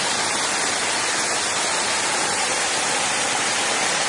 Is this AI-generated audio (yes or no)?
no